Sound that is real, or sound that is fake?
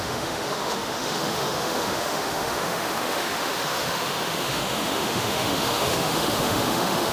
fake